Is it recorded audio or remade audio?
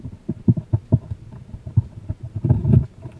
recorded